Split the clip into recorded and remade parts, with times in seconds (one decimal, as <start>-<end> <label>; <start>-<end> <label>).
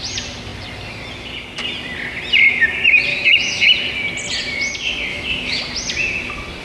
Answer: 0.0-3.1 recorded; 3.1-3.6 remade; 3.6-5.1 recorded; 5.1-5.6 remade; 5.6-6.6 recorded